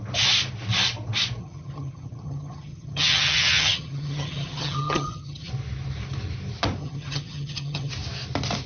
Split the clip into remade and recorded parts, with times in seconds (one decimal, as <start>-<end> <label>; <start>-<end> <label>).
0.0-1.4 recorded; 1.4-5.5 remade; 5.5-6.8 recorded; 6.8-7.9 remade; 7.9-8.7 recorded